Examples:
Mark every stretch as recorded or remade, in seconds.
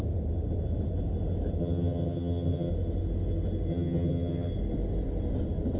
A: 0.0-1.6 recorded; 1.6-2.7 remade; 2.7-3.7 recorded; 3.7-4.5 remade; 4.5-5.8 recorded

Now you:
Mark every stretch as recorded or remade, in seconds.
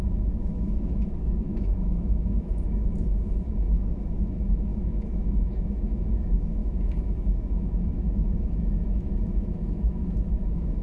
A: 0.0-10.8 remade